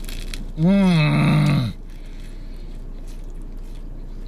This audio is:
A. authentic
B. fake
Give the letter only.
A